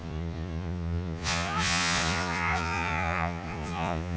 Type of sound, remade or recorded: remade